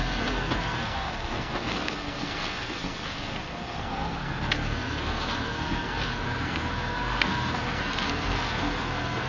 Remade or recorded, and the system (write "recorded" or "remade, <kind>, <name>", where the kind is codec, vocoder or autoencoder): remade, codec, SNAC